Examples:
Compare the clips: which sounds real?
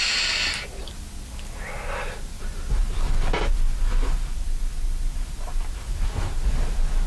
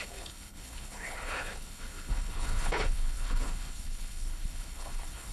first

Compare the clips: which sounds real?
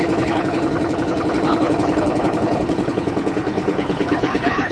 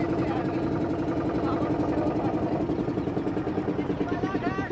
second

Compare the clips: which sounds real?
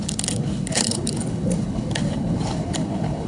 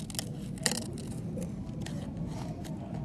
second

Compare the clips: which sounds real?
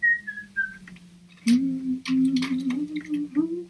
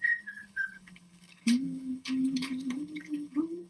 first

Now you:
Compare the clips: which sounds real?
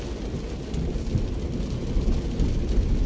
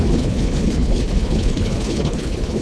first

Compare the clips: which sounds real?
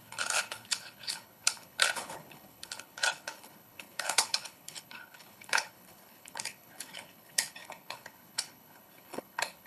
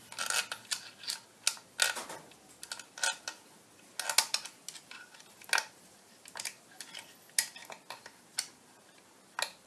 second